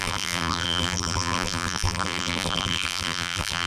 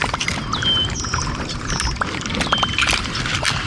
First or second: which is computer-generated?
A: first